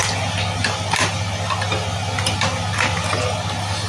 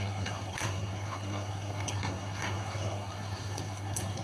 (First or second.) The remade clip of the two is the second